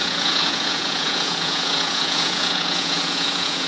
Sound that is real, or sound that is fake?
fake